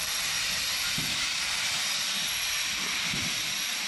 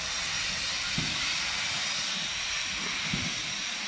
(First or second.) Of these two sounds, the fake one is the first